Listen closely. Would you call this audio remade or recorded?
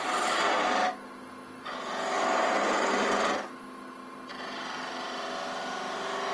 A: recorded